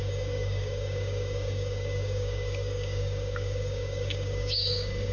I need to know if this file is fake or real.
fake